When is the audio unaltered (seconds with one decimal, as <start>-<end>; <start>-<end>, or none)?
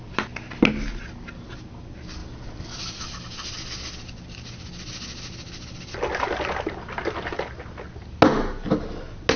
0.0-9.4